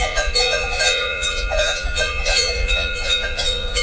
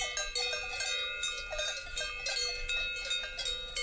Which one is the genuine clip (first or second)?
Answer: second